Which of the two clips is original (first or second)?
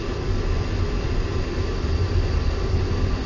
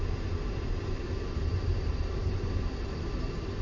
first